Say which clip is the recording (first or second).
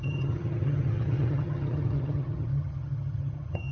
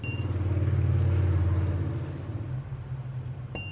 second